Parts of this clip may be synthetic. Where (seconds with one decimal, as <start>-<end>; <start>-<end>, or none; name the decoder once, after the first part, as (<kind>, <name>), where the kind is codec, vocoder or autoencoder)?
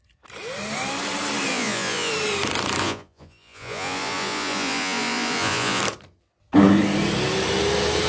1.5-2.1 (vocoder, Vocos); 2.8-5.8